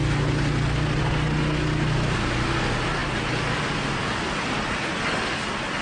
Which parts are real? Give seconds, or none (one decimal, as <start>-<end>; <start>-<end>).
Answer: 0.0-5.8